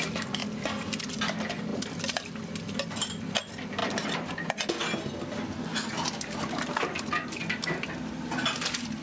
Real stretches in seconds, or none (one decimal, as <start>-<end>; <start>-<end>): 0.0-9.0